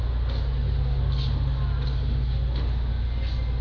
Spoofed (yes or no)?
no